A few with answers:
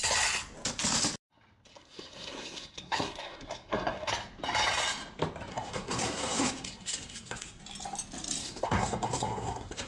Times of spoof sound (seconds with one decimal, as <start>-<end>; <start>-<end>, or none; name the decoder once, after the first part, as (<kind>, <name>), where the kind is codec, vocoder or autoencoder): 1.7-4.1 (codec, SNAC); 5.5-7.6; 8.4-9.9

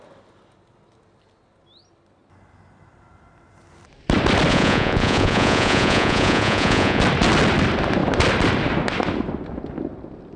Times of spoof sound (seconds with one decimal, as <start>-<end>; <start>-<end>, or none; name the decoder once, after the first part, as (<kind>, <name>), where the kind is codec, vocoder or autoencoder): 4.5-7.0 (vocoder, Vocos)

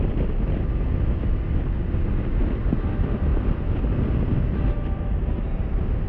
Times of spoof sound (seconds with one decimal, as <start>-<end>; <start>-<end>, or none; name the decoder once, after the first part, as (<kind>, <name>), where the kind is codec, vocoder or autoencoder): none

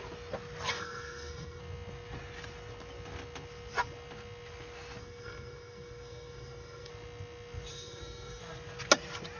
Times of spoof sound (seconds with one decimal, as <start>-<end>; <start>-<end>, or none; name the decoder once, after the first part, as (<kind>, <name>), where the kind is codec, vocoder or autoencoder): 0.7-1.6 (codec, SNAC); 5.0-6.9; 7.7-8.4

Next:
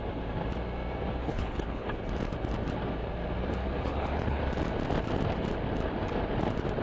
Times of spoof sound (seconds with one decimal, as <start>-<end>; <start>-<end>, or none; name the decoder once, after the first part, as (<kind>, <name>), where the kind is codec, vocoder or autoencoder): 1.2-2.0 (codec, HILCodec); 3.6-4.4

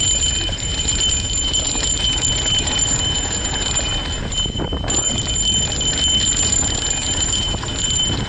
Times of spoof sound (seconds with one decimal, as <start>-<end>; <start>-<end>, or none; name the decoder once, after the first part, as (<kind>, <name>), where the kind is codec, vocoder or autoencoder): 0.0-0.7 (vocoder, BigVGAN v2); 1.4-3.9; 6.4-8.3